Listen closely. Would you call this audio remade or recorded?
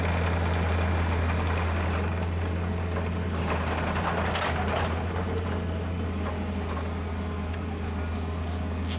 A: recorded